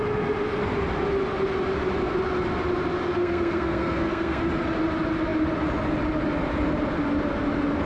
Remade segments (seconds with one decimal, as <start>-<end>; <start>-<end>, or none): 3.2-4.4